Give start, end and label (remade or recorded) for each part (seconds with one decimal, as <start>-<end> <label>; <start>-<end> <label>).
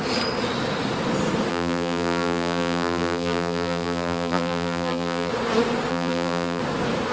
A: 0.0-1.5 recorded; 1.5-5.3 remade; 5.3-5.9 recorded; 5.9-6.6 remade; 6.6-7.1 recorded